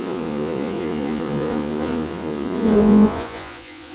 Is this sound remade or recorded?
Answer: remade